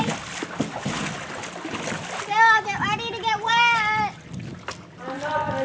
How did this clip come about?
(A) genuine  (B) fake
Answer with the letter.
A